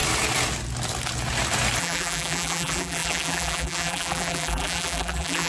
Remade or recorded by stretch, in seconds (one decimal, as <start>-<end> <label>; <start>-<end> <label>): 0.0-1.8 recorded; 1.8-5.5 remade